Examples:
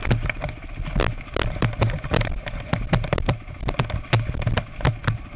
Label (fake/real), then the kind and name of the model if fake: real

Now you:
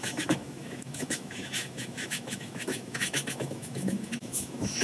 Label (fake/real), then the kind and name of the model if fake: fake, autoencoder, DAC-VAE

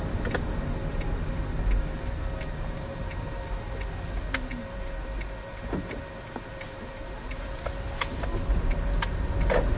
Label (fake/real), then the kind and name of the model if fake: real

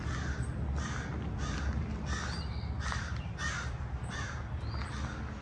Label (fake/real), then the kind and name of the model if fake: real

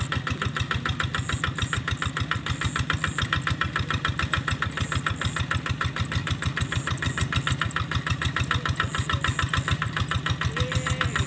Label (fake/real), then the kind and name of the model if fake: real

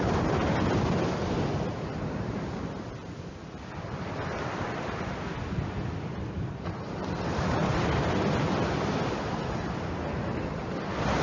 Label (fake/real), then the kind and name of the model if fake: real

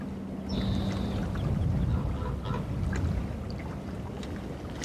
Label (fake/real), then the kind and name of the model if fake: real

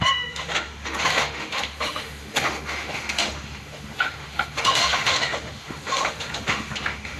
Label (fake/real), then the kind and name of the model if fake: fake, autoencoder, DAC-VAE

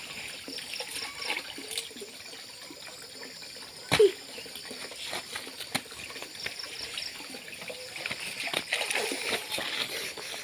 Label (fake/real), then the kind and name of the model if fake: real